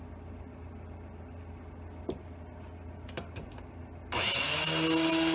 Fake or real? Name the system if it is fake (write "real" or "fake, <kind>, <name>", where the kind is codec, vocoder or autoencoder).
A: real